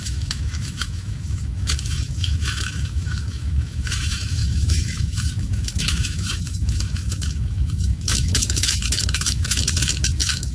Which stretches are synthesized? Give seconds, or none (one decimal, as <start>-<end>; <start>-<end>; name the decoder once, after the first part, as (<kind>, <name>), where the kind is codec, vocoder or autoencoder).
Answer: 0.0-10.5 (autoencoder, DAC-VAE)